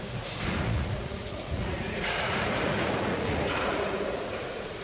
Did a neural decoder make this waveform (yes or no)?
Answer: yes